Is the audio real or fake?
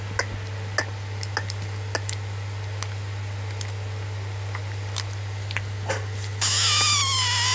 real